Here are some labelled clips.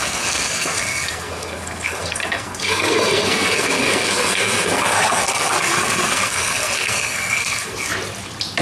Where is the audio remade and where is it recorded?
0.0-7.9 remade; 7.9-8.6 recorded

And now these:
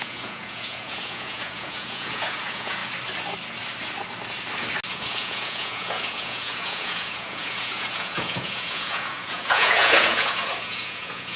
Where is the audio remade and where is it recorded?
0.0-2.8 remade; 2.8-4.9 recorded; 4.9-11.4 remade

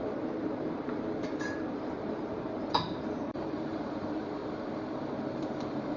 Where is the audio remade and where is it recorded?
0.0-4.4 remade; 4.4-5.3 recorded; 5.3-6.0 remade